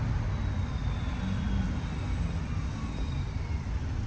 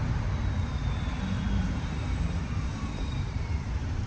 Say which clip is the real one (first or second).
first